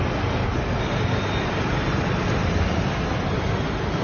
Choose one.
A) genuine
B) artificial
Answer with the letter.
A